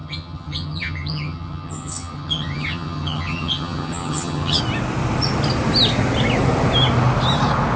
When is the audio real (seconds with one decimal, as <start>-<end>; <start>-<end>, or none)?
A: 4.6-7.8